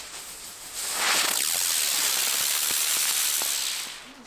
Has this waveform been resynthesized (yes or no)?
no